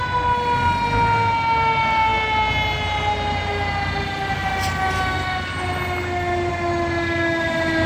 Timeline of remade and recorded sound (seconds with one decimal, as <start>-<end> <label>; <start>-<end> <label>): 0.0-7.9 recorded